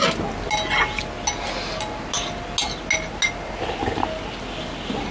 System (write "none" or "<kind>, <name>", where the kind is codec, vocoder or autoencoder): none